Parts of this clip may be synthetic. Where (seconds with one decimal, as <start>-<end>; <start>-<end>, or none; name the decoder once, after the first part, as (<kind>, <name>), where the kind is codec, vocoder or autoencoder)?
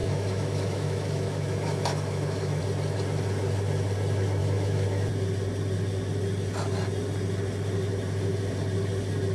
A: 0.0-2.6 (autoencoder, DAC-VAE); 4.4-5.1